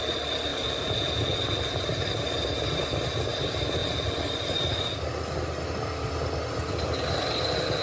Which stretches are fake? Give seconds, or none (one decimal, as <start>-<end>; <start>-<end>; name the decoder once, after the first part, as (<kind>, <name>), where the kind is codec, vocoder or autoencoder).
none